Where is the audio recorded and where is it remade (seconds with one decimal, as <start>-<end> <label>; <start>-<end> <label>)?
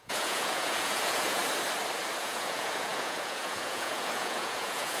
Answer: 0.0-1.4 remade; 1.4-2.2 recorded; 2.2-5.0 remade